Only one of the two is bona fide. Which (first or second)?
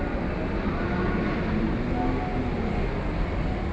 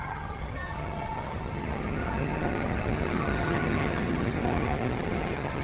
first